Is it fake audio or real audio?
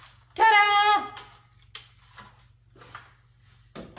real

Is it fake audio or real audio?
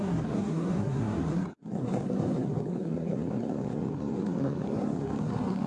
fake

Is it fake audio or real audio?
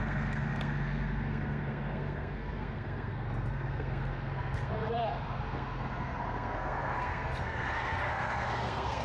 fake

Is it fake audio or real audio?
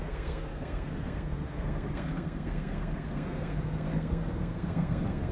fake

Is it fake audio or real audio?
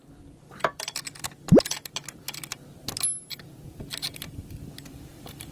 real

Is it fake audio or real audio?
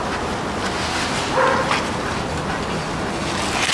real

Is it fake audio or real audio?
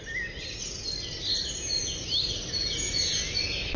real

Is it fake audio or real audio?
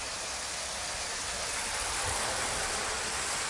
real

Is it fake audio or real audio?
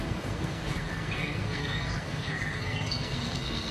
fake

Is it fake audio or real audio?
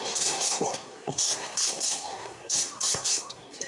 fake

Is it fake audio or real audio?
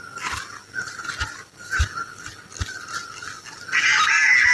real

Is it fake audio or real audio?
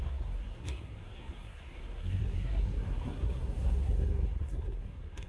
fake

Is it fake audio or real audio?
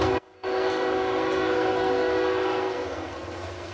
fake